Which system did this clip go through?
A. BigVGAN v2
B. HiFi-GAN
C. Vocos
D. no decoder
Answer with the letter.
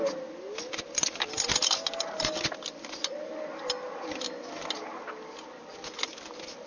D